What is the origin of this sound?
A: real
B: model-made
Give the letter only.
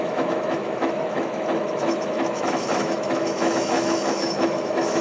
B